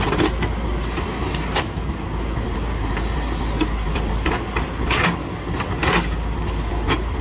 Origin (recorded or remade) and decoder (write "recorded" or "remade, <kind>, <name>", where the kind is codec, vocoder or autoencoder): recorded